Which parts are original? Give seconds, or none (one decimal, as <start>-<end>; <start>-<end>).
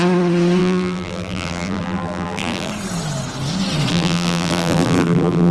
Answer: 0.0-0.6; 2.7-3.9